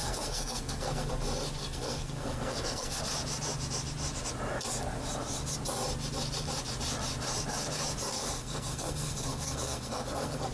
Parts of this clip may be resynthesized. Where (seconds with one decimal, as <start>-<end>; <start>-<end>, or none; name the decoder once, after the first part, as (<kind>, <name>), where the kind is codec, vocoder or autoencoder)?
0.0-1.1 (codec, SNAC); 1.6-3.0; 8.1-10.5